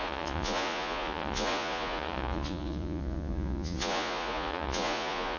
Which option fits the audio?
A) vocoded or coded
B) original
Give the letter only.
A